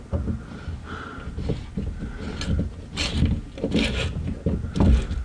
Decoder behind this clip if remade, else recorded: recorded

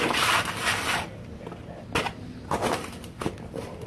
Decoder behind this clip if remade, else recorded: recorded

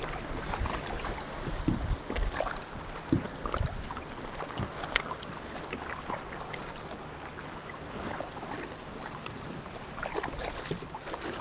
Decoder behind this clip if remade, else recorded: recorded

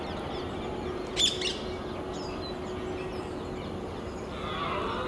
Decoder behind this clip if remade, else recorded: recorded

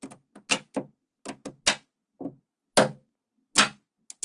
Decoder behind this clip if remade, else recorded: recorded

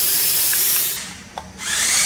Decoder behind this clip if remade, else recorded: remade, vocoder, BigVGAN v2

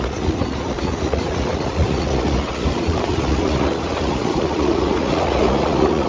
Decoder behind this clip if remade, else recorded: remade, vocoder, Vocos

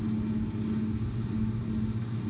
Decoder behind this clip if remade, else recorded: recorded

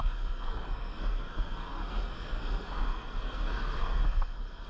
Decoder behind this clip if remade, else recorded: remade, codec, SNAC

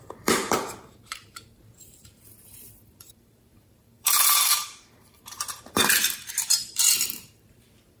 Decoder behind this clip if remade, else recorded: remade, vocoder, BigVGAN v2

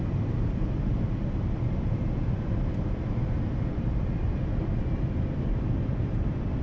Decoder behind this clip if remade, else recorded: remade, vocoder, BigVGAN v2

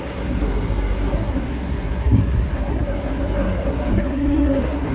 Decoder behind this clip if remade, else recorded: remade, codec, SNAC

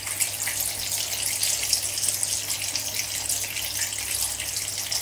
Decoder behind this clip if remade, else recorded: recorded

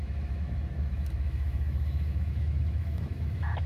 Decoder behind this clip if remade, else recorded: remade, autoencoder, DAC-VAE